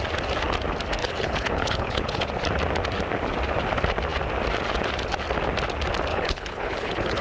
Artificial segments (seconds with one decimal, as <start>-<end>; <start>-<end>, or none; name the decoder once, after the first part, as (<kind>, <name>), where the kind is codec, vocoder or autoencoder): 1.0-2.3 (codec, HILCodec); 6.1-7.2